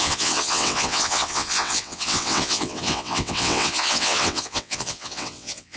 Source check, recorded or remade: remade